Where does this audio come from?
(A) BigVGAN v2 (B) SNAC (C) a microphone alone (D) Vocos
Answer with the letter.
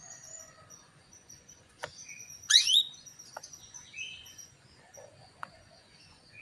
D